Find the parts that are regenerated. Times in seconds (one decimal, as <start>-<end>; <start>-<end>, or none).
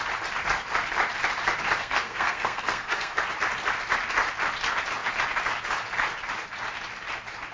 1.8-3.2